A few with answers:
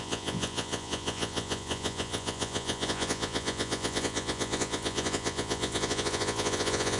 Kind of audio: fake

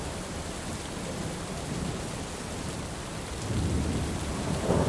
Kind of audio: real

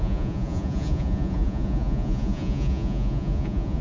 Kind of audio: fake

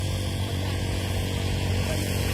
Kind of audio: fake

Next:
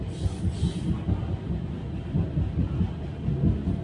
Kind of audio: real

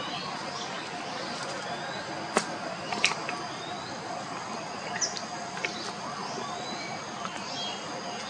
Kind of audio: real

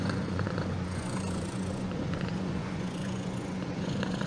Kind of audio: fake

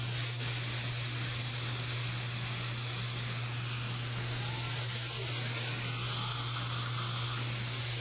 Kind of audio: real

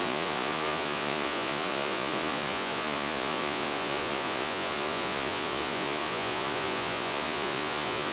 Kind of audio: fake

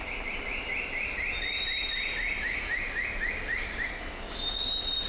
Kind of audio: real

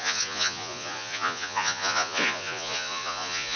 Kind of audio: fake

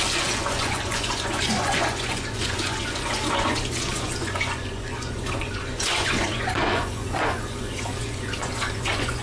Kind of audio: fake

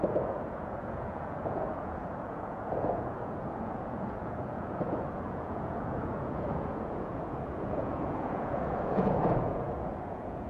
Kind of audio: fake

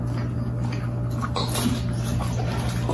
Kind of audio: real